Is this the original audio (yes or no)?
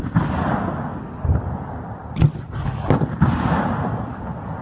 yes